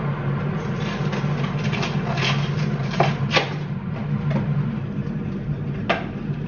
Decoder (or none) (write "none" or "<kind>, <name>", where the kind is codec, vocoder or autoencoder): none